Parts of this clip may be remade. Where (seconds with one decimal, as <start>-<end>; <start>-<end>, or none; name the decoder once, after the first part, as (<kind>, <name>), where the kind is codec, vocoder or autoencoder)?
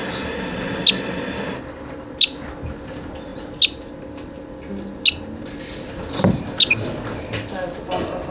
none